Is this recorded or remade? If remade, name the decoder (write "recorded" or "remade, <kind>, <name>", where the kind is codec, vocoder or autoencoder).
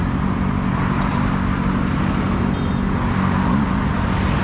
recorded